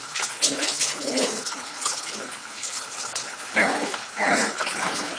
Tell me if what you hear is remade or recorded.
remade